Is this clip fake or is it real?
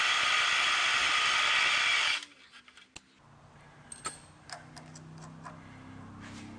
real